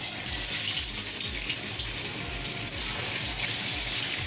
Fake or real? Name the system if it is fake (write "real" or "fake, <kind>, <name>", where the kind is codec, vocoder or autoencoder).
real